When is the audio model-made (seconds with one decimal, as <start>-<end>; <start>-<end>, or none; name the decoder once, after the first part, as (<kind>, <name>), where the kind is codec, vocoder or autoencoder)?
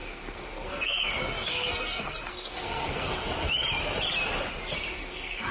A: 0.0-3.1 (codec, SNAC); 4.9-5.5